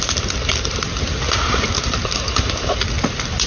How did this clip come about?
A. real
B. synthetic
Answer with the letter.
A